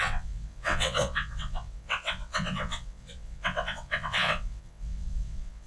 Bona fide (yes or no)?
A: no